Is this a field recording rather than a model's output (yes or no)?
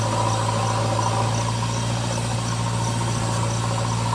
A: yes